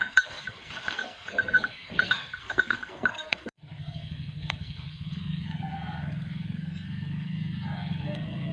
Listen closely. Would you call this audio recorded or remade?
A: remade